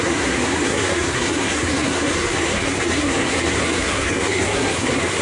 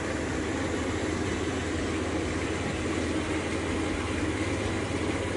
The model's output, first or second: first